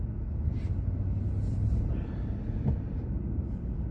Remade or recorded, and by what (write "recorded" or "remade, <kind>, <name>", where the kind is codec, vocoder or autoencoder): recorded